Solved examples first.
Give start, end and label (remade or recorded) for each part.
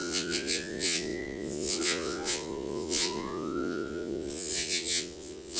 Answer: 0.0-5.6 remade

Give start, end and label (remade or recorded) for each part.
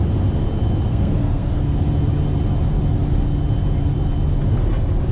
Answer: 0.0-0.9 recorded; 0.9-1.6 remade; 1.6-5.1 recorded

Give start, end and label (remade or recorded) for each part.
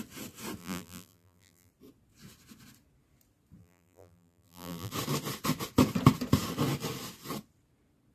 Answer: 0.0-0.6 recorded; 0.6-1.7 remade; 1.7-3.6 recorded; 3.6-4.9 remade; 4.9-8.1 recorded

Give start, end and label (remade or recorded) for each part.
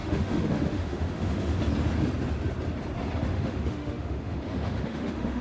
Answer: 0.0-1.6 remade; 1.6-3.3 recorded; 3.3-5.4 remade